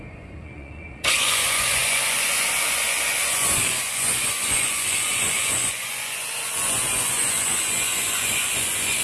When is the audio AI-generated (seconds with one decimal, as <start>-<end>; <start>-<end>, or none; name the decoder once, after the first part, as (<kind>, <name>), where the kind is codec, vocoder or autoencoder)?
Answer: 0.0-9.0 (vocoder, Vocos)